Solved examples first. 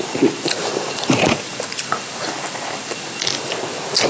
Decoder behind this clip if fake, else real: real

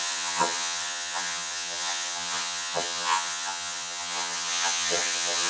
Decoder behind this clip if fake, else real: fake, vocoder, HiFi-GAN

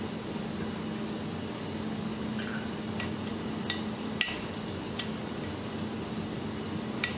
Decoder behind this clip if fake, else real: real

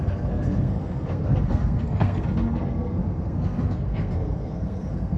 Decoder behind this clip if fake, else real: fake, codec, SNAC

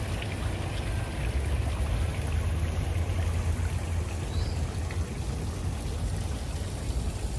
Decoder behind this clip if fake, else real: real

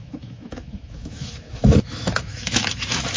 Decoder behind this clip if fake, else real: fake, autoencoder, DAC-VAE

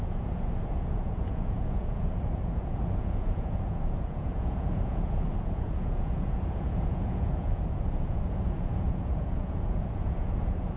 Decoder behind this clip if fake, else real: fake, vocoder, Vocos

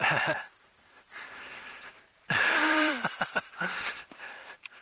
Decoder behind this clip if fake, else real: fake, vocoder, BigVGAN v2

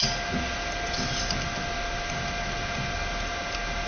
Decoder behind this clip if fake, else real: real